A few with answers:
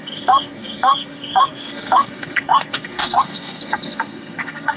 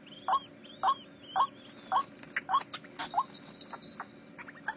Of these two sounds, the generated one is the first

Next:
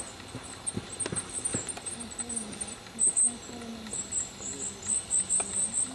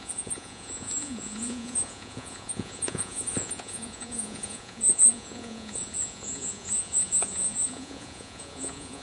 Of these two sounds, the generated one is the second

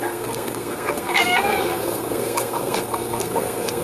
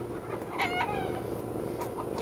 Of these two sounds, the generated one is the first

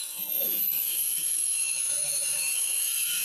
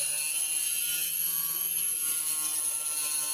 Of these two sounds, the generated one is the first